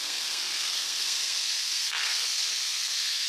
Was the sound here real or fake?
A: fake